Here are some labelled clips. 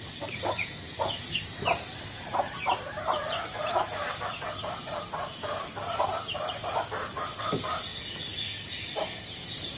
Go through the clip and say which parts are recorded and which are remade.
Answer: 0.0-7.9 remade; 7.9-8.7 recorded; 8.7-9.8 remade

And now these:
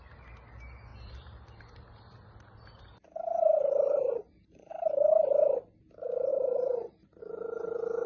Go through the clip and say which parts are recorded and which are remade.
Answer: 0.0-0.9 recorded; 0.9-4.7 remade; 4.7-6.3 recorded; 6.3-7.2 remade; 7.2-8.1 recorded

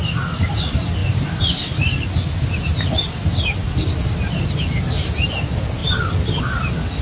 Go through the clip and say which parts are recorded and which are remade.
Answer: 0.0-5.8 recorded; 5.8-6.4 remade; 6.4-7.0 recorded